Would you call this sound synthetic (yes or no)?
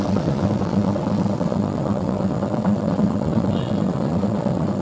yes